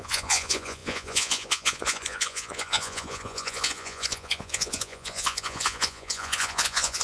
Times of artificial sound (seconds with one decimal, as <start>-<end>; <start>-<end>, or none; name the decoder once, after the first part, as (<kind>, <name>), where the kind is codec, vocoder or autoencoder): 0.0-7.0 (vocoder, Vocos)